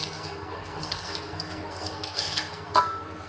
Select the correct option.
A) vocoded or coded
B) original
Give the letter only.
A